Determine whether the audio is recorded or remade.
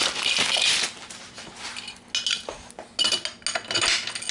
recorded